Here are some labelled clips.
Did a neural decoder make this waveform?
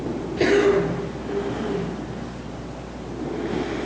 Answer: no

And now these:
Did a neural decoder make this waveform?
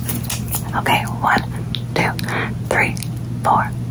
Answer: no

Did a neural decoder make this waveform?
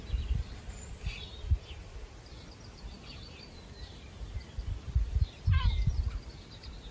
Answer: no